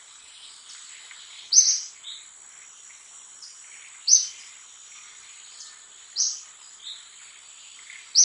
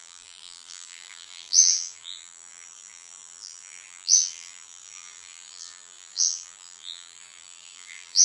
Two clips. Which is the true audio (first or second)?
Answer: first